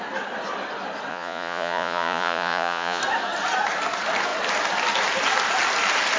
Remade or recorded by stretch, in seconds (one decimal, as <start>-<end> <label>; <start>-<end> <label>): 0.0-1.1 recorded; 1.1-3.0 remade; 3.0-6.2 recorded